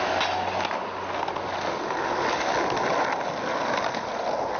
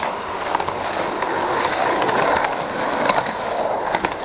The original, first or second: first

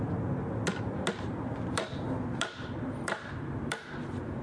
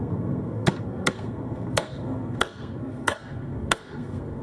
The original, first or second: first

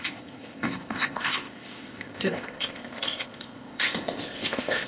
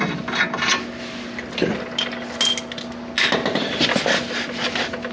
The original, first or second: second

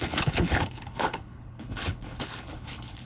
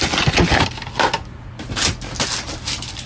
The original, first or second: second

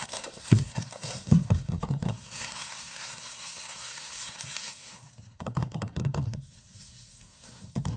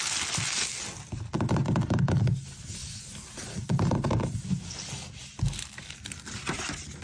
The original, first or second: second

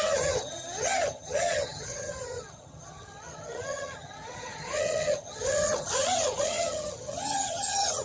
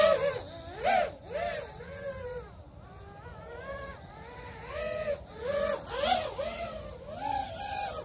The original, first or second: second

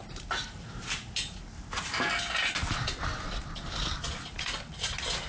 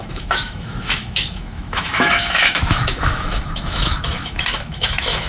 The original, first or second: first